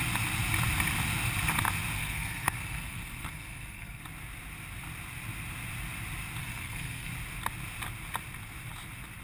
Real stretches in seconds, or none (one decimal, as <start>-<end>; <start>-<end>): 0.0-2.0; 4.0-6.4; 7.1-9.2